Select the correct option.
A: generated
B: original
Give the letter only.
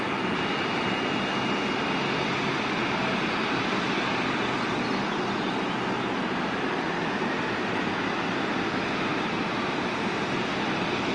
B